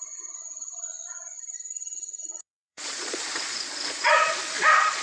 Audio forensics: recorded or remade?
remade